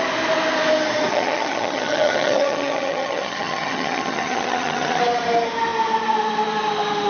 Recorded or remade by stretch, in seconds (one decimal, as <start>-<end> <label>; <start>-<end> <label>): 0.0-1.1 recorded; 1.1-5.0 remade; 5.0-7.1 recorded